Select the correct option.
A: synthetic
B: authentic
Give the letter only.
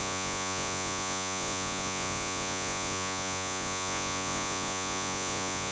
A